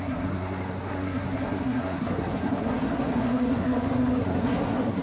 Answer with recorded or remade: remade